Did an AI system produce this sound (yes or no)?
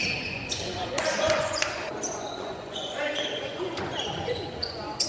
yes